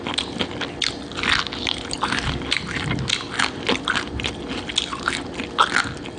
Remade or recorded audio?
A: recorded